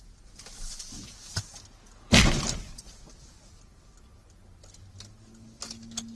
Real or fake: real